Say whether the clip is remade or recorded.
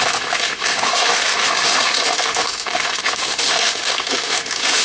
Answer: remade